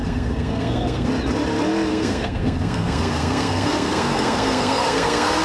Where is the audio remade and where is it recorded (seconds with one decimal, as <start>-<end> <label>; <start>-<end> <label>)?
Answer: 0.0-1.1 remade; 1.1-1.9 recorded; 1.9-5.4 remade